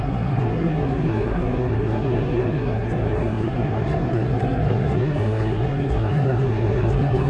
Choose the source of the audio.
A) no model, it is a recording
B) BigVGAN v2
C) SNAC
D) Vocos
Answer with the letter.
C